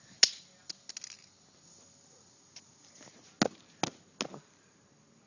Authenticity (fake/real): real